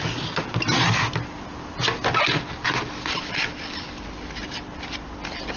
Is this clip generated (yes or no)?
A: no